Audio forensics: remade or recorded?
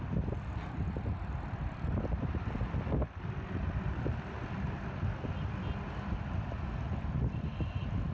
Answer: remade